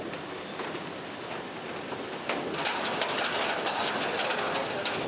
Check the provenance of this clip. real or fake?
real